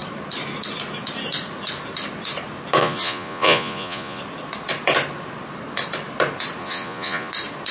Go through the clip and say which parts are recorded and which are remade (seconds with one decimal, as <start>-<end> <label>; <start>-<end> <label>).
0.0-2.8 recorded; 2.8-4.2 remade; 4.2-6.6 recorded; 6.6-7.3 remade; 7.3-7.7 recorded